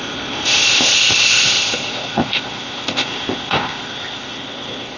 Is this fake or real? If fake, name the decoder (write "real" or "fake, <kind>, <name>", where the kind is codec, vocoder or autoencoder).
fake, codec, ZipCodec